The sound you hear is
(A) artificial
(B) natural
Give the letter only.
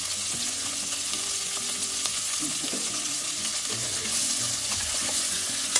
A